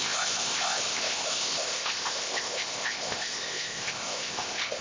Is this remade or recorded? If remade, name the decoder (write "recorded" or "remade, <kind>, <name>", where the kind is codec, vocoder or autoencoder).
remade, codec, ZipCodec